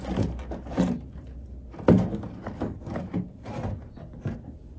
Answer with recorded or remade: recorded